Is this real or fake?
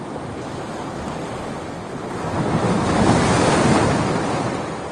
real